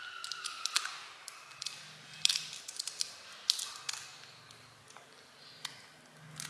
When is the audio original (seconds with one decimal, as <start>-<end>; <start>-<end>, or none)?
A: 0.0-6.5